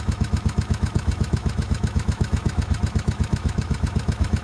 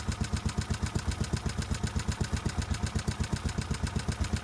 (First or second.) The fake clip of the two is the first